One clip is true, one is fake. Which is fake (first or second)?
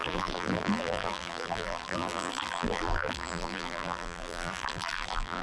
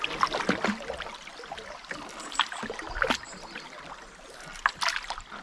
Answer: first